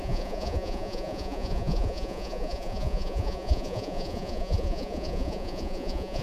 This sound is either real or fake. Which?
fake